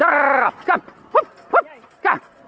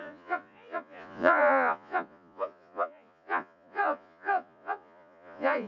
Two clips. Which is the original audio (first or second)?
first